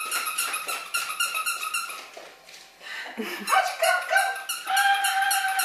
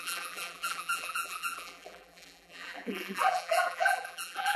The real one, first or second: first